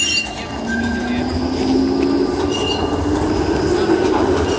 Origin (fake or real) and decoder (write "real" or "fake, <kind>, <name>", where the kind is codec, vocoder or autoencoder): real